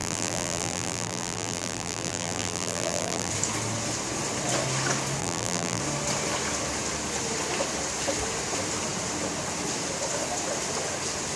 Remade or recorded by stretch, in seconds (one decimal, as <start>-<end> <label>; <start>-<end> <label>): 0.0-3.3 remade; 3.3-5.2 recorded; 5.2-5.8 remade; 5.8-11.4 recorded